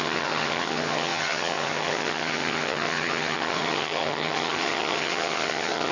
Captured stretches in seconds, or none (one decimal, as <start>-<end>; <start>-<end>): none